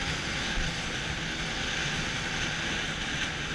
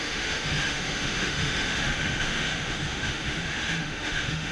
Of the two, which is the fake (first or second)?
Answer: second